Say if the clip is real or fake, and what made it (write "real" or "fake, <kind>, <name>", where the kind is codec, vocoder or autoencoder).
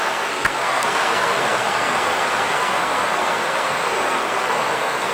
fake, codec, SNAC